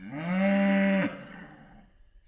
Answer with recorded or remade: recorded